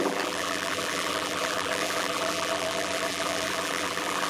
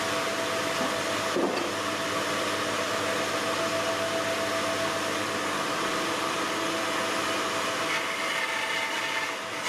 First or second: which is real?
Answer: second